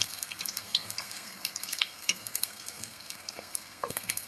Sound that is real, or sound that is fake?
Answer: fake